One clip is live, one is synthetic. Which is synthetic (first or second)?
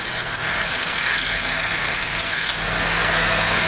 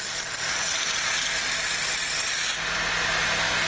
first